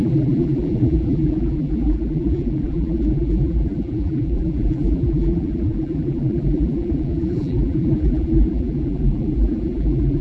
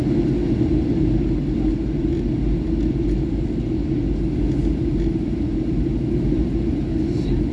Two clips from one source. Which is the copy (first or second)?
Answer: first